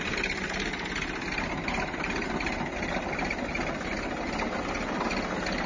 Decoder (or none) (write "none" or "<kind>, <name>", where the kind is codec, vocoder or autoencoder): none